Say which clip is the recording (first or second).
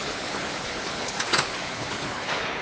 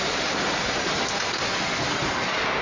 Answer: second